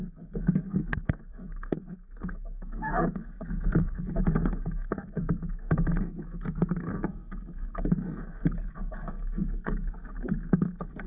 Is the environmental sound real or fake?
fake